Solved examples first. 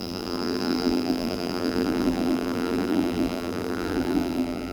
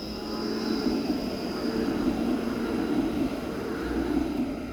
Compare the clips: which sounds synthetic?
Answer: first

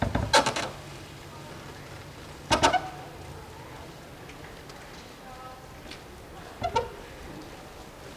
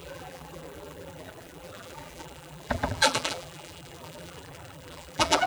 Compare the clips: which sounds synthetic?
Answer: second